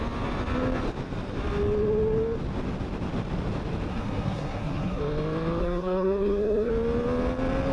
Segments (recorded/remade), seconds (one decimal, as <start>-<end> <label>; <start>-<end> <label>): 0.0-3.9 recorded; 3.9-5.0 remade; 5.0-5.6 recorded; 5.6-6.7 remade; 6.7-7.7 recorded